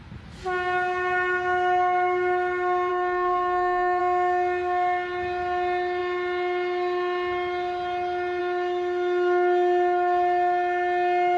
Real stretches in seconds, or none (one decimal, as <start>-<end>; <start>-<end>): 0.0-2.9; 4.0-11.4